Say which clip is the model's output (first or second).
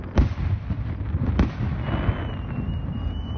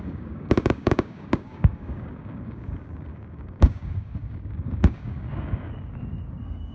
second